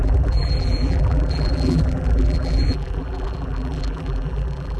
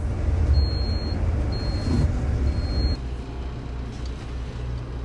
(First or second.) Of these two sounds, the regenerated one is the first